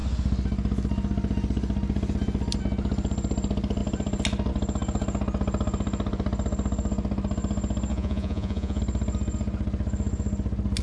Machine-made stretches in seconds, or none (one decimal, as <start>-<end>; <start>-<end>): 7.9-8.8